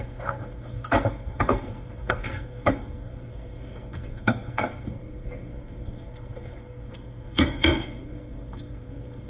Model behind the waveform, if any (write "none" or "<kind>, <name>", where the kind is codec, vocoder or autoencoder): codec, SNAC